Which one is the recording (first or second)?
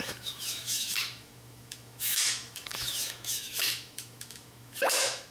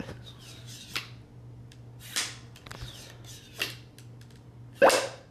second